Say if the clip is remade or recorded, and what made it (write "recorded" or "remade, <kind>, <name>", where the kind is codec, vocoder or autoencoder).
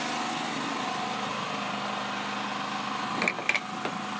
recorded